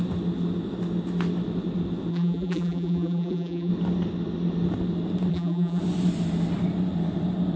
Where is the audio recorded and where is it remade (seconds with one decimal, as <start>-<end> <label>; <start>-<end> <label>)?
0.0-2.1 recorded; 2.1-3.7 remade; 3.7-5.3 recorded; 5.3-5.8 remade; 5.8-7.6 recorded